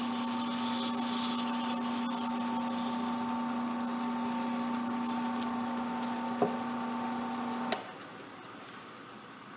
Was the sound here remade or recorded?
recorded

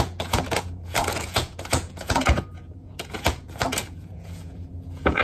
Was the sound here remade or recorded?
remade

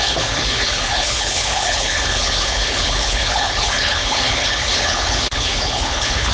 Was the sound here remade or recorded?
remade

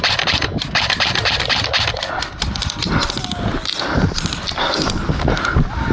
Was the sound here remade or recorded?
recorded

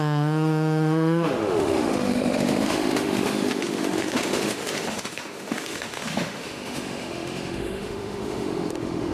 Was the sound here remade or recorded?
remade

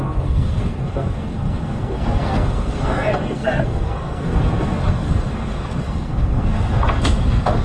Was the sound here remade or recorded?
remade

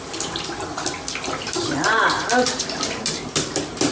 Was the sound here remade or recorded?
recorded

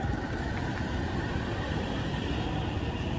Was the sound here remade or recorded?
remade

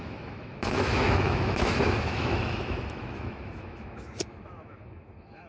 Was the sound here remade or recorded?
remade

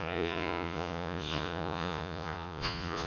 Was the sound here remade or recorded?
remade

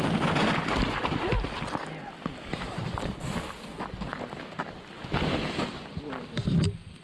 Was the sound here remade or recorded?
recorded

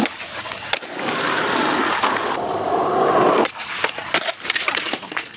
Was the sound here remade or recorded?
recorded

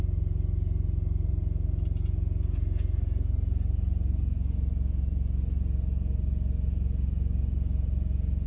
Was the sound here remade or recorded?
recorded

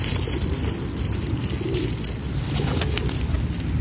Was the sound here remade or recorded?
recorded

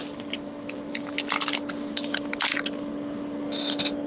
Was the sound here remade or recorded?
recorded